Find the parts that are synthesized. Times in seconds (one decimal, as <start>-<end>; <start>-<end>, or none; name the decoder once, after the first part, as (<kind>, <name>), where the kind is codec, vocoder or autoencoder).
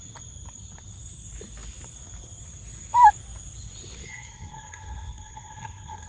4.1-6.1 (codec, SNAC)